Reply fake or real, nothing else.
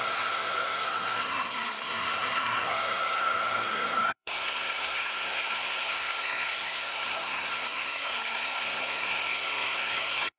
fake